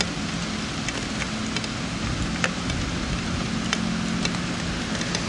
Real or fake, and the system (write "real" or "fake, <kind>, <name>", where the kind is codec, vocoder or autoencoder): real